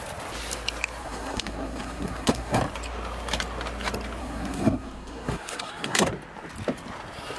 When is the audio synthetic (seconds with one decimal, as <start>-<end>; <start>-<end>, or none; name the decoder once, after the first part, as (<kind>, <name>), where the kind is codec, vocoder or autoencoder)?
1.0-2.6 (codec, SNAC); 4.2-6.1